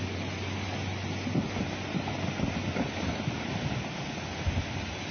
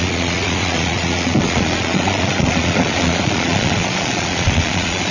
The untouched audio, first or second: first